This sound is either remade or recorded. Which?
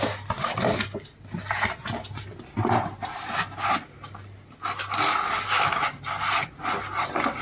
recorded